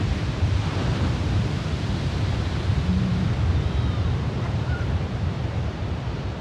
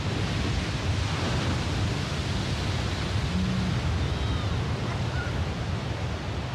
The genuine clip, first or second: second